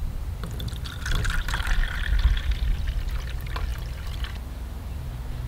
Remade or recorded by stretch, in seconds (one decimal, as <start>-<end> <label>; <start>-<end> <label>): 0.0-2.8 remade; 2.8-3.7 recorded; 3.7-5.1 remade; 5.1-5.5 recorded